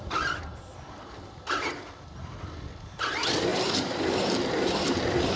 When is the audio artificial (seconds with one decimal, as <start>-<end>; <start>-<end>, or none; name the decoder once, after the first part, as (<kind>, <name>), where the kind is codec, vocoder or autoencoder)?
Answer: 3.5-5.0 (vocoder, BigVGAN v2)